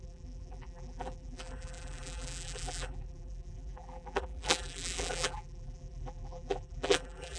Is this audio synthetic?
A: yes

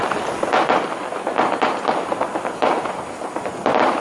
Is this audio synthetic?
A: no